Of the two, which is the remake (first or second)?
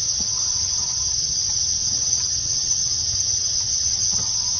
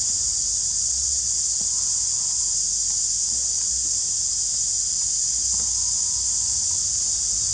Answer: first